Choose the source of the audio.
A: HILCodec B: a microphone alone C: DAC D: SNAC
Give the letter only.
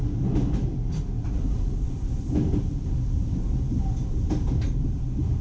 B